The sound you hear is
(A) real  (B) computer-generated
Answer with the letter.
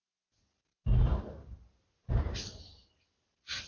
A